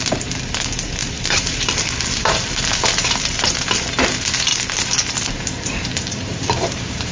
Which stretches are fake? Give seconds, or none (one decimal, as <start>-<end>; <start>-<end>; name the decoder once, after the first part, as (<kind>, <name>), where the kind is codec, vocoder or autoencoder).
0.0-4.5 (vocoder, BigVGAN v2); 5.3-7.1